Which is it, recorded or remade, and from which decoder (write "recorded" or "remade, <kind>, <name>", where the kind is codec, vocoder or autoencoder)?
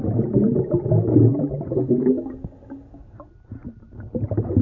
recorded